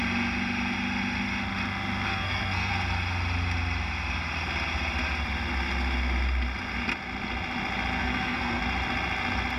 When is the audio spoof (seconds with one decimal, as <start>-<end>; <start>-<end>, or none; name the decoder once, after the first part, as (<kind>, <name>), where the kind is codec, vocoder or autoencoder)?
2.1-2.7 (codec, SNAC); 8.0-8.6